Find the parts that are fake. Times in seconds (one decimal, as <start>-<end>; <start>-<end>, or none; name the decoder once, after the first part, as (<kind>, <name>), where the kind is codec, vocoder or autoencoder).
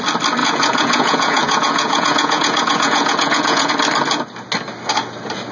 0.4-3.7 (vocoder, Vocos)